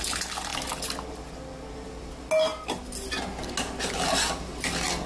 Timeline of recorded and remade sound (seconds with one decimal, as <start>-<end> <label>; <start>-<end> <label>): 0.0-5.1 recorded